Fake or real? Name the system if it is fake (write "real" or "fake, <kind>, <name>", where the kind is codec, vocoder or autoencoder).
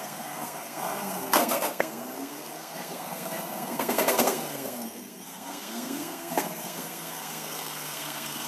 fake, codec, SNAC